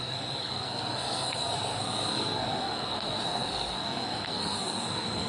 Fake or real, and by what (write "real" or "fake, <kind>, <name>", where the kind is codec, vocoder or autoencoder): fake, codec, SNAC